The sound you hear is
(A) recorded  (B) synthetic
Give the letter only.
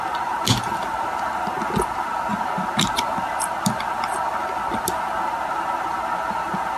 A